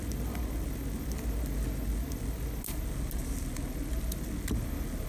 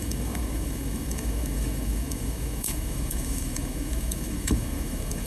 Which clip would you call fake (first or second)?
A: second